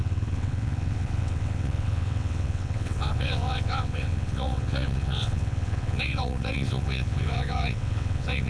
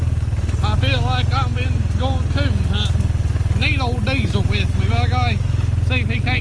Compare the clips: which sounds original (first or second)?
second